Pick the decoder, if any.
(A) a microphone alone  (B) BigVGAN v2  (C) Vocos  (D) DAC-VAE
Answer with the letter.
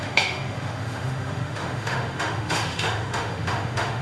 D